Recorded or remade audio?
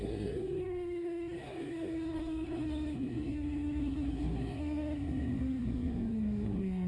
remade